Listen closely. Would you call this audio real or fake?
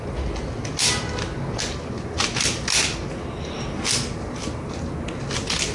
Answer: real